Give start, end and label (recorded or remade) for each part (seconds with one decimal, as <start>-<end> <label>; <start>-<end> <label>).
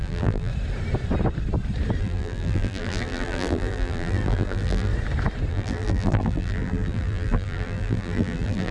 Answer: 0.0-0.5 remade; 0.5-2.0 recorded; 2.0-4.9 remade; 4.9-5.5 recorded; 5.5-8.7 remade